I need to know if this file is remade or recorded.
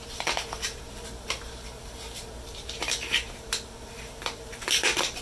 remade